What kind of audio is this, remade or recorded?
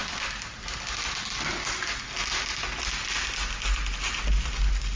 recorded